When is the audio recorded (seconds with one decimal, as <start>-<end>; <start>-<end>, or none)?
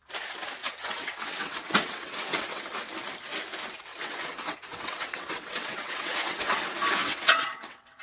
0.0-0.6; 2.6-3.9; 6.6-7.0